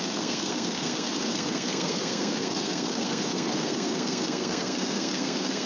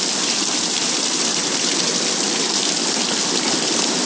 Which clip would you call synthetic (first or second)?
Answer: first